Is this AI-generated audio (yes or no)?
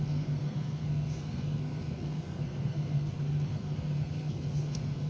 yes